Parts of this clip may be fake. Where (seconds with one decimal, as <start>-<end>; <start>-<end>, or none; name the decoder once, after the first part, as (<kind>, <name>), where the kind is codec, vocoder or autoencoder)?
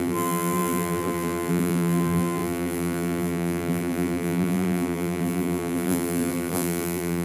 0.0-7.2 (vocoder, BigVGAN v2)